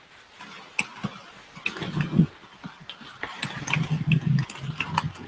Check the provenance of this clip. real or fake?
real